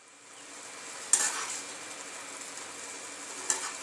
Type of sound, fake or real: real